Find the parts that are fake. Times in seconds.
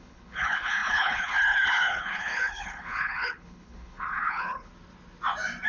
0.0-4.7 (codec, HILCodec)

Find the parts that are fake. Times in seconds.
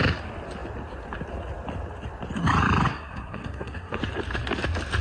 2.9-4.0 (codec, SNAC)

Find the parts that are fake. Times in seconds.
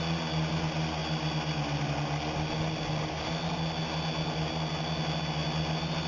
none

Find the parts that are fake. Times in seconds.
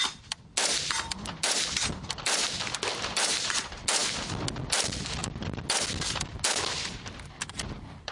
none